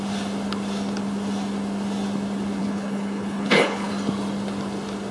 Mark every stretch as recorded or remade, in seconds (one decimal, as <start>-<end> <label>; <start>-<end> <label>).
0.0-2.6 recorded; 2.6-3.9 remade; 3.9-5.1 recorded